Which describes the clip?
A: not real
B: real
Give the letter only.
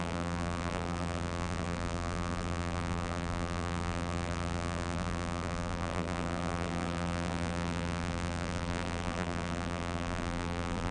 A